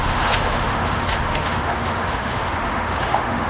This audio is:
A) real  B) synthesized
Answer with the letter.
B